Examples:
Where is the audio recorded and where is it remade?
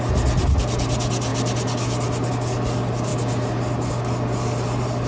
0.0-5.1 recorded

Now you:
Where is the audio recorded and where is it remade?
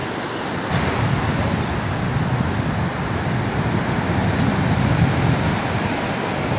0.0-6.6 recorded